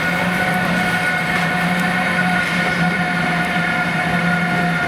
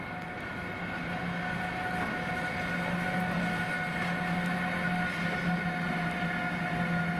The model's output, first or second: first